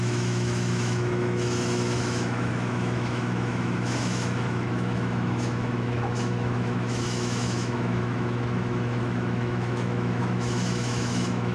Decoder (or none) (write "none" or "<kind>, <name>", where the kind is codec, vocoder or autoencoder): autoencoder, DAC-VAE